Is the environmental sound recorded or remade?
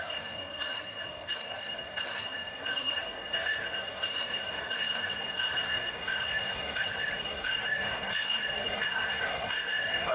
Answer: remade